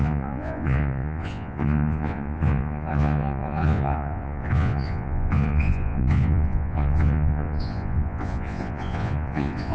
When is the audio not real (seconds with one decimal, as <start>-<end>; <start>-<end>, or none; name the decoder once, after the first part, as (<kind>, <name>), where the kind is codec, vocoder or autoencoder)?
0.0-9.7 (vocoder, Vocos)